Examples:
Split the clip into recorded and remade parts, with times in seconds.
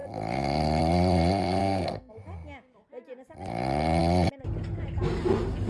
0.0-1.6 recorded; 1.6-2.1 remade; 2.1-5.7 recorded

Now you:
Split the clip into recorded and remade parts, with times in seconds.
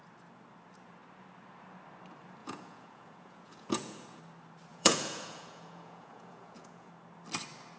0.0-2.4 recorded; 2.4-4.2 remade; 4.2-4.7 recorded; 4.7-6.9 remade; 6.9-7.8 recorded